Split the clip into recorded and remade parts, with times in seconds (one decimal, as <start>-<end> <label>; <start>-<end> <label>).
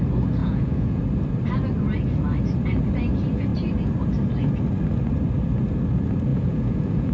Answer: 0.0-0.4 recorded; 0.4-1.0 remade; 1.0-6.3 recorded; 6.3-7.1 remade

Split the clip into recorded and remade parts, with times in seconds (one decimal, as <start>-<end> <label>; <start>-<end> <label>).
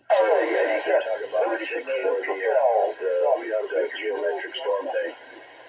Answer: 0.0-5.7 recorded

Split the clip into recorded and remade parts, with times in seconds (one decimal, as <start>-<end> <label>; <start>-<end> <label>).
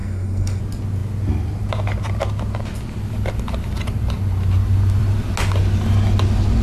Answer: 0.0-0.6 remade; 0.6-6.6 recorded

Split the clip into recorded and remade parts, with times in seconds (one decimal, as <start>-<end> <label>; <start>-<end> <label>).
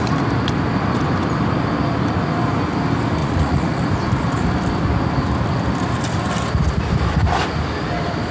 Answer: 0.0-3.2 recorded; 3.2-3.8 remade; 3.8-8.3 recorded